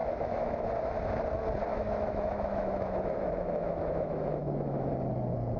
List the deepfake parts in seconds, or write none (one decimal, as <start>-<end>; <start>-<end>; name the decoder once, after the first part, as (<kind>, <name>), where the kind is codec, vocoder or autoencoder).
0.0-0.7 (autoencoder, DAC-VAE); 1.7-4.9